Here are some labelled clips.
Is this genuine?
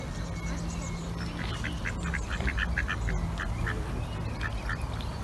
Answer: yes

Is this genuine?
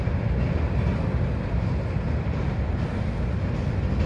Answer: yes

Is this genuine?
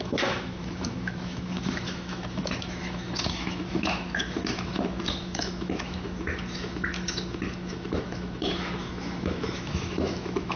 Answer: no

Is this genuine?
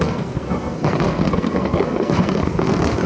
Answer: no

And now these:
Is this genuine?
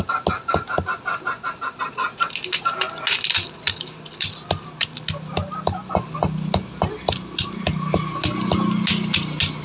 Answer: yes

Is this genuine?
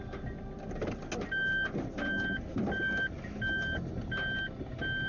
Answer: yes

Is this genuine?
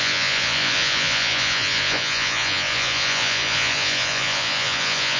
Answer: no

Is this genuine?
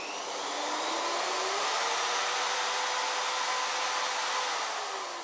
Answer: yes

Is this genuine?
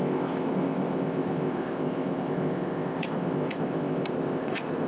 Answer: no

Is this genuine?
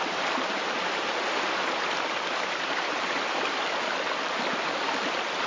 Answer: yes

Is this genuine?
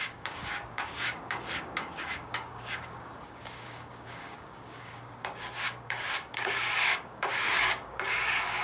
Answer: no